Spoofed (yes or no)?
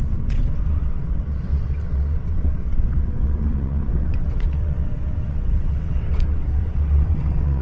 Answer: yes